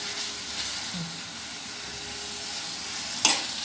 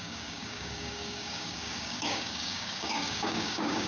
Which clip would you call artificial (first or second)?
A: second